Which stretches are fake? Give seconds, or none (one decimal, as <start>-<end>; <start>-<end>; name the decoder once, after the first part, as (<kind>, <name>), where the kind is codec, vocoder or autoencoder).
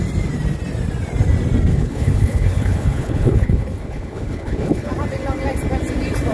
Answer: 1.7-4.9 (codec, HILCodec)